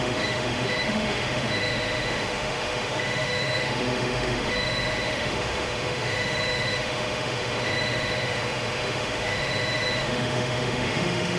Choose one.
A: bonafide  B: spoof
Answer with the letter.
B